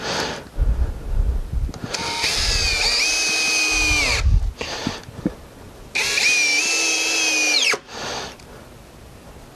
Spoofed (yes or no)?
no